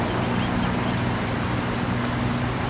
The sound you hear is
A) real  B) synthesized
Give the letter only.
A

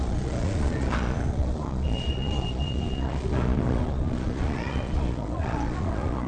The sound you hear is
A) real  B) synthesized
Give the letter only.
B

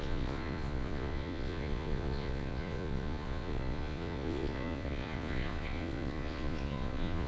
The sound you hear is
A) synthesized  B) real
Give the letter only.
A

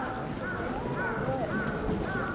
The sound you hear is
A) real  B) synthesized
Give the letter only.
A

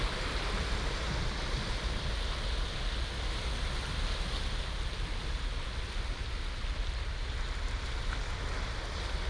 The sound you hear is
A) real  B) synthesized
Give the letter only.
A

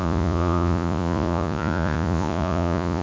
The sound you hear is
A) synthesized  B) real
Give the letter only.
A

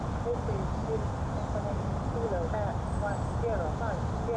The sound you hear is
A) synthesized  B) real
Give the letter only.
B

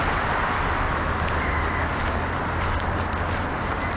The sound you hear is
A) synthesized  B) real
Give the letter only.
B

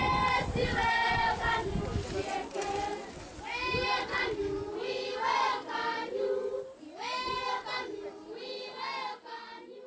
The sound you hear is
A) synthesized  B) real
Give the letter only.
B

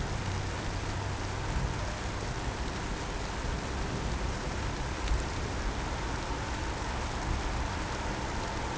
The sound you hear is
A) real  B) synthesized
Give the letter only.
A